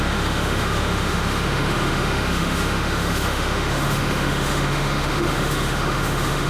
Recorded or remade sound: remade